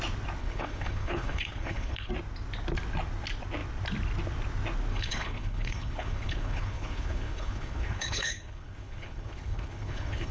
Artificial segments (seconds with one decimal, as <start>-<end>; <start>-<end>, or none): 0.4-2.1; 4.9-10.3